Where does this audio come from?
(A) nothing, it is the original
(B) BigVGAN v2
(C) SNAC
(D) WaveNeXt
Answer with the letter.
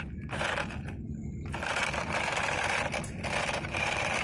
A